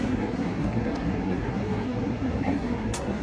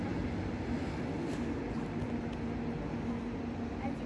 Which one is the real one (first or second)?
second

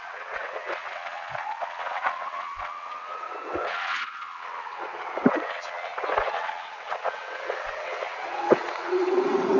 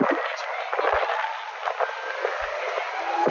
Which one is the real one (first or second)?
second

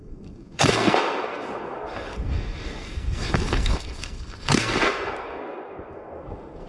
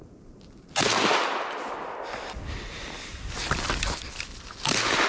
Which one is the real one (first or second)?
second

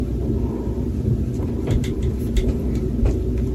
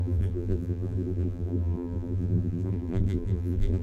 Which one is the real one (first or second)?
first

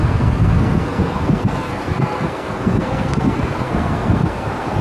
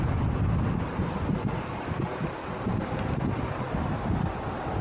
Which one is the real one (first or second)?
second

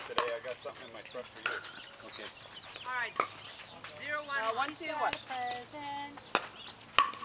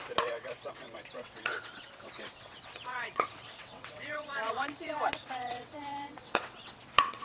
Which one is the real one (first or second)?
first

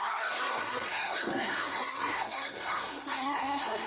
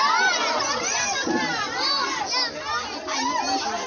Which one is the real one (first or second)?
second